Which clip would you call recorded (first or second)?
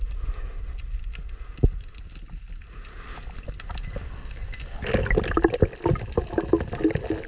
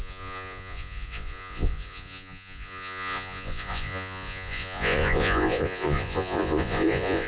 first